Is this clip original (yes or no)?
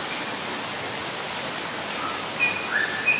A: yes